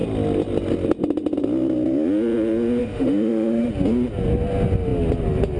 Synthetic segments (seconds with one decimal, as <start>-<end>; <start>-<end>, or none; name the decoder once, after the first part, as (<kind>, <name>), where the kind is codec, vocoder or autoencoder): 2.8-3.7 (autoencoder, DAC-VAE)